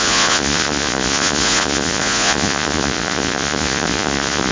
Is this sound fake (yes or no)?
yes